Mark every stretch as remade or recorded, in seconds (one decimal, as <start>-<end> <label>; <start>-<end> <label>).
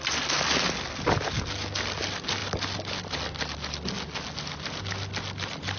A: 0.0-5.8 recorded